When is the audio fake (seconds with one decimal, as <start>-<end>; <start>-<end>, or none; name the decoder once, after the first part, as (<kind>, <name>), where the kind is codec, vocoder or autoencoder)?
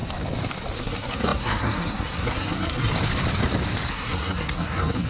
0.8-2.9 (codec, SNAC); 3.9-5.1